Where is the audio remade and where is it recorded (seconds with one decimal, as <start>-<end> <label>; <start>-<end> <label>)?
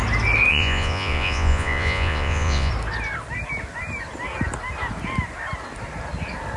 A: 0.0-0.5 recorded; 0.5-2.7 remade; 2.7-6.6 recorded